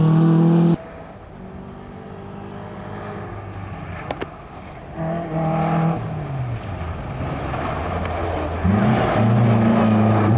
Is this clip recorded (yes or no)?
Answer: yes